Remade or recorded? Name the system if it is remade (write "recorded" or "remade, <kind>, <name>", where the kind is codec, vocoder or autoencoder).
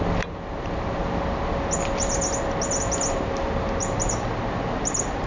recorded